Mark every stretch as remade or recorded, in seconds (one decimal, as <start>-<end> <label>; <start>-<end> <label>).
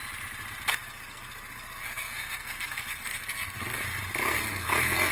0.0-0.7 recorded; 0.7-3.8 remade; 3.8-4.2 recorded; 4.2-5.1 remade